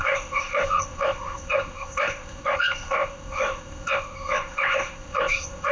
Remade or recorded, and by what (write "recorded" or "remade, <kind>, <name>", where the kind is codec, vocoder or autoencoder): remade, codec, ZipCodec